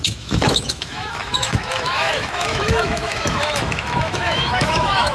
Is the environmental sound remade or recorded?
remade